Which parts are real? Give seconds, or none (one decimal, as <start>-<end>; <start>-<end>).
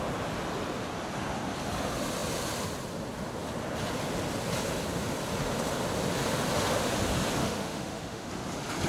0.0-7.4; 8.3-8.9